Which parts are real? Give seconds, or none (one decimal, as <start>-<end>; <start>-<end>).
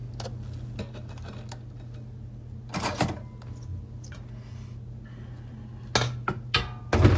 0.0-7.2